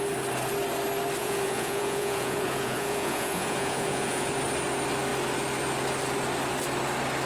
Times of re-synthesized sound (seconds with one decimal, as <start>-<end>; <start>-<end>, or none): 1.2-4.3